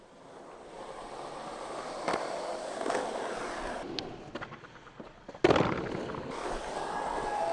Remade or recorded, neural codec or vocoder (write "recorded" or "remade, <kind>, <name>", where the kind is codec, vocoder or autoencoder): recorded